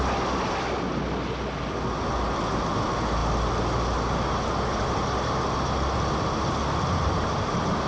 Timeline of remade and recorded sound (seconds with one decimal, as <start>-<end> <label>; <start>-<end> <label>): 0.0-7.9 recorded